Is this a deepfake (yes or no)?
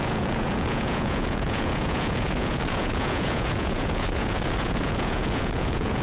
yes